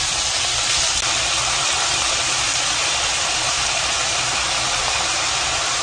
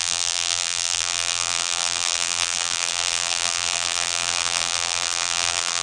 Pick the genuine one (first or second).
first